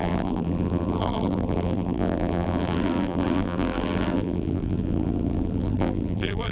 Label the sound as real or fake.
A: fake